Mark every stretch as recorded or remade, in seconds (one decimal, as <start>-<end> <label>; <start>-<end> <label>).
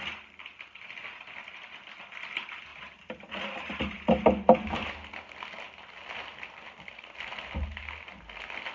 0.0-2.7 recorded; 2.7-3.8 remade; 3.8-8.7 recorded